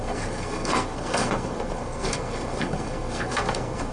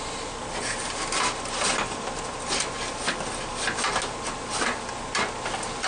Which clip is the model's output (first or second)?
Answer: first